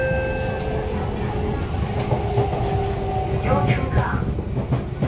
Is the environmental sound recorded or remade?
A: recorded